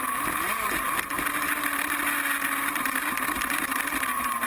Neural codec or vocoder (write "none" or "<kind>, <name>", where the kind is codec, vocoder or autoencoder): none